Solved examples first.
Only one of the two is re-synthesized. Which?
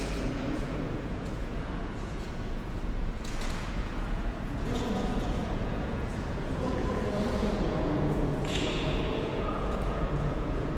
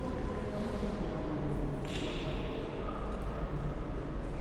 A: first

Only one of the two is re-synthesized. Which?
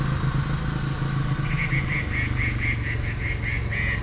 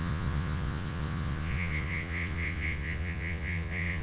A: second